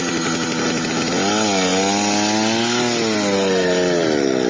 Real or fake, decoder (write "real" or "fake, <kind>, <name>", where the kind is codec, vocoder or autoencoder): real